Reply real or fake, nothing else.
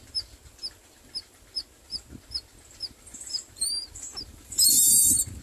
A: real